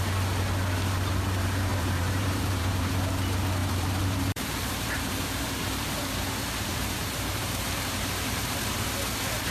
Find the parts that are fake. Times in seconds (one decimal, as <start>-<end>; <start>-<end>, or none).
1.7-2.9; 3.6-8.9